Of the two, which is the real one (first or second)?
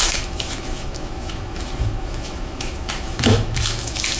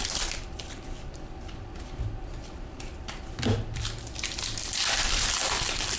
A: second